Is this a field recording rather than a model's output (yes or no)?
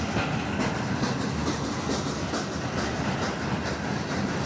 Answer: yes